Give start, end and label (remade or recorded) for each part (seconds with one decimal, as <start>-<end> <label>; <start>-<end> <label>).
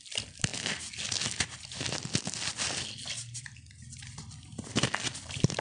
0.0-0.5 remade; 0.5-3.7 recorded; 3.7-5.6 remade